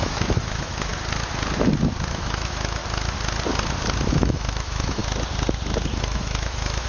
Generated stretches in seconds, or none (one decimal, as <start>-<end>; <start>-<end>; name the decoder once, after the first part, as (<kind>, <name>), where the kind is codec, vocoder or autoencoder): 0.0-0.9 (autoencoder, DAC-VAE); 2.1-2.8; 4.1-5.0; 6.0-6.9